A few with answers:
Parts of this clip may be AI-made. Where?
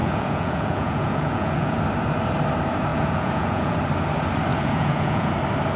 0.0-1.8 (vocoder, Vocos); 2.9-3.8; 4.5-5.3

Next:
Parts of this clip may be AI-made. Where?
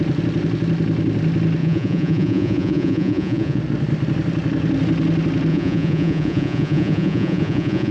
1.6-3.6 (vocoder, Vocos); 5.5-7.9